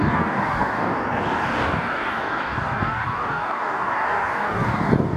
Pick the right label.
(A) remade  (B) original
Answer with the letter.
A